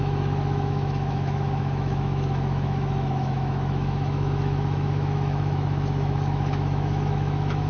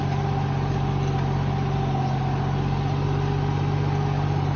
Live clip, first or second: second